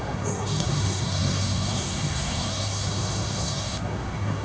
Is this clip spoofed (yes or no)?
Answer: yes